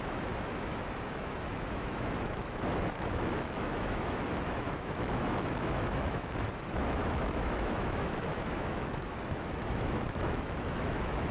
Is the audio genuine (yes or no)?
no